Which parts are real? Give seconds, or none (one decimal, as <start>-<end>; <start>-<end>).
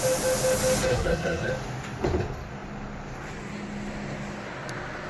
0.0-0.9; 1.5-5.1